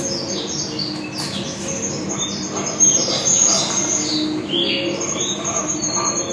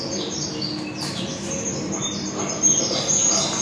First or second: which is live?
first